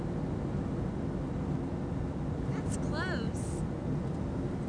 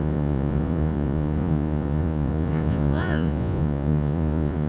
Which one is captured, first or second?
first